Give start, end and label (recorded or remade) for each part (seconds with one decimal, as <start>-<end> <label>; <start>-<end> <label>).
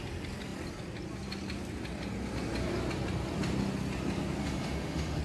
0.0-4.4 recorded; 4.4-5.2 remade